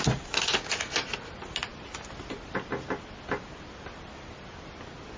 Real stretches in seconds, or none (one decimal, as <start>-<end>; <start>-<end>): 0.0-5.2